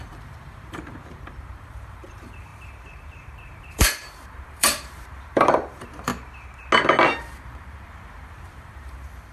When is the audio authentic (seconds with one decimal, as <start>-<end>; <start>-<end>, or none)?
6.1-7.2